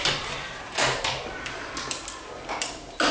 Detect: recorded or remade recorded